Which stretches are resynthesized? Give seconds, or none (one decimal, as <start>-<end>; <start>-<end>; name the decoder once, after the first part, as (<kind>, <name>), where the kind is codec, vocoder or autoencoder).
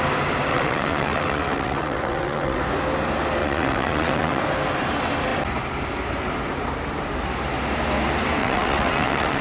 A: 0.5-2.6 (vocoder, WaveNeXt); 3.4-4.4; 8.4-9.4